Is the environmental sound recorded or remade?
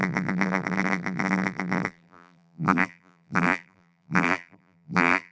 remade